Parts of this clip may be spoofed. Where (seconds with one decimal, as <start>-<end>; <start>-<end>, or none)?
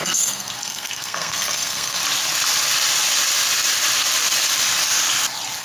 0.0-2.0